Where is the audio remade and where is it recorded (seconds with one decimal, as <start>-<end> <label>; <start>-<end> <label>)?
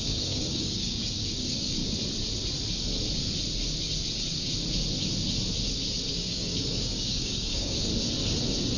0.0-1.8 remade; 1.8-6.1 recorded; 6.1-7.9 remade; 7.9-8.8 recorded